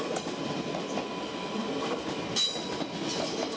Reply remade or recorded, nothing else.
recorded